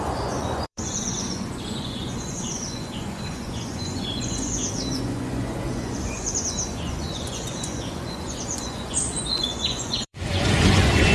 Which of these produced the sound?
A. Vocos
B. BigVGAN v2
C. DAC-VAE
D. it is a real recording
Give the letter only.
A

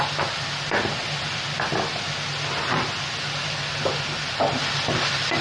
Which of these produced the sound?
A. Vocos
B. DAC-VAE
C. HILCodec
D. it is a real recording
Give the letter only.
D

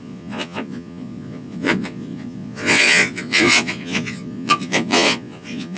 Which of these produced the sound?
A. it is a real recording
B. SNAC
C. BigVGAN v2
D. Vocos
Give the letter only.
D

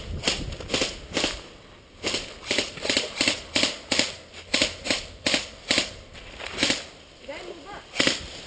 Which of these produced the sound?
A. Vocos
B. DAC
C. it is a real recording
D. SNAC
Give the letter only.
C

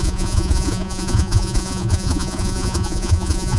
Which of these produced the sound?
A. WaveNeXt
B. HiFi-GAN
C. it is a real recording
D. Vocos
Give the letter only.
D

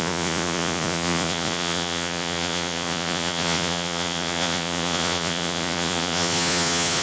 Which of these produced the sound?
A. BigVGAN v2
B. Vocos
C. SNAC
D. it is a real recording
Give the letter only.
B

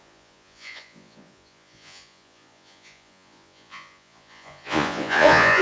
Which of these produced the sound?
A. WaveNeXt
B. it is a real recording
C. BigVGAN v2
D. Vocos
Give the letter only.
D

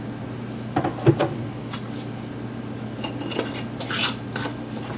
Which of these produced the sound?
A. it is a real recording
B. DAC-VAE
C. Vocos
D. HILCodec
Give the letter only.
A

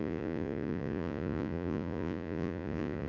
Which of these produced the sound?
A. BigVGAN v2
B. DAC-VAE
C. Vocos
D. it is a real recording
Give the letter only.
C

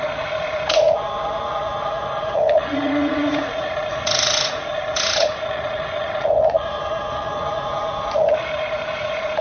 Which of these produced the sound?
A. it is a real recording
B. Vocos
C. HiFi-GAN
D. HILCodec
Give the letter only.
B